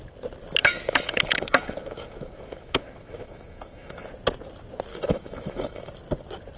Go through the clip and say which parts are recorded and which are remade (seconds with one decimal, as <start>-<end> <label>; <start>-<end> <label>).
0.0-0.6 recorded; 0.6-4.1 remade; 4.1-4.9 recorded; 4.9-5.9 remade; 5.9-6.6 recorded